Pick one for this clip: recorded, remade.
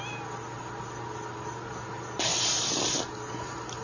recorded